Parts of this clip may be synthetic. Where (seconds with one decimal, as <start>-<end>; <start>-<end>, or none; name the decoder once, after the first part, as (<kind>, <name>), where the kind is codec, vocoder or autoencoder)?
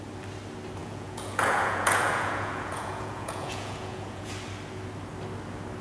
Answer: 0.8-4.3 (vocoder, Vocos)